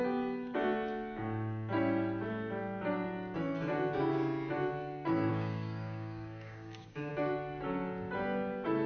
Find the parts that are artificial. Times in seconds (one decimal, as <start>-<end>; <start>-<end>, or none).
5.3-7.1

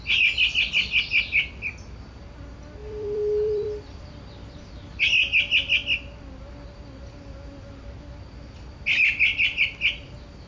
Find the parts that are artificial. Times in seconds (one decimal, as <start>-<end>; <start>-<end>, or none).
2.8-5.0; 9.3-9.8

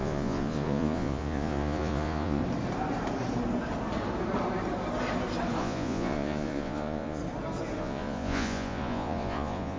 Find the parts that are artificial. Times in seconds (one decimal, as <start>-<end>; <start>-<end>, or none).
0.0-2.4; 5.6-7.2; 7.8-9.8

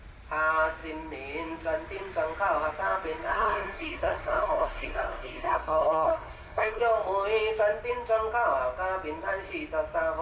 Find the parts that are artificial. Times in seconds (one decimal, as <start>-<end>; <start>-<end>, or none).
3.3-6.8

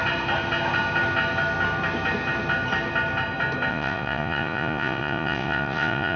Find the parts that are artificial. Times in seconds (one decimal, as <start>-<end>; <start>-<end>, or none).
3.7-6.2

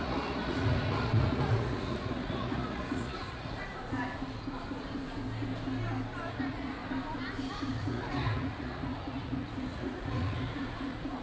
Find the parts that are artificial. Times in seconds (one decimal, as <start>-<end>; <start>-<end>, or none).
0.0-3.7; 6.3-6.8; 7.5-11.2

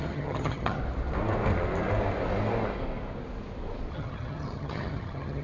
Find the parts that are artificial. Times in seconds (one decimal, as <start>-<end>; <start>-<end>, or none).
0.0-0.8; 3.9-5.4

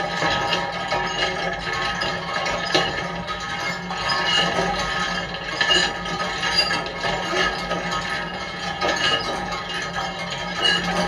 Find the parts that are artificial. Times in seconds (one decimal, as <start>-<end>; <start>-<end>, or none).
8.3-9.6